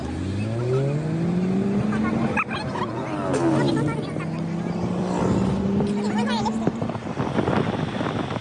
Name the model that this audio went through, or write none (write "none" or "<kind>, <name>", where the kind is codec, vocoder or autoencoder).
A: none